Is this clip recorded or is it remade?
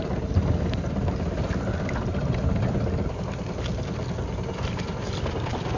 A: recorded